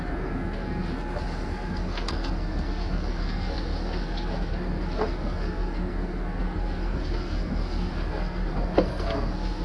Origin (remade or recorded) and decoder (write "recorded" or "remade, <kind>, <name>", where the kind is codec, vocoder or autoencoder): remade, codec, SNAC